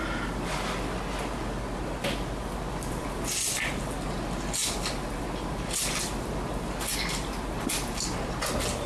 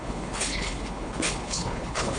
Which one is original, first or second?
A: first